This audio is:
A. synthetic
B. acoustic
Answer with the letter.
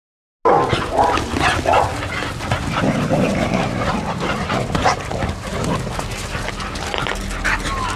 B